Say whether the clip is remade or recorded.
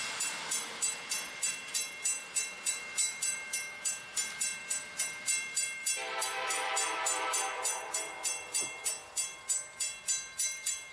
remade